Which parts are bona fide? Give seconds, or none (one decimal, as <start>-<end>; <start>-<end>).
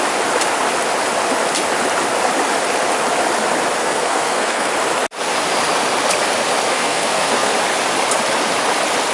0.0-3.8; 4.7-6.7; 7.5-9.1